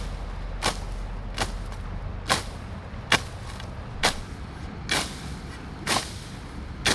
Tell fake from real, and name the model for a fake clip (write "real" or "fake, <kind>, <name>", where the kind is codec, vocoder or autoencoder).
real